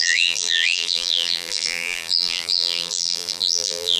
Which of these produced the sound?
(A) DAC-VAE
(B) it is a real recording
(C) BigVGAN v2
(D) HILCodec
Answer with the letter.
C